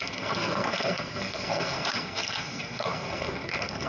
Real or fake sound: fake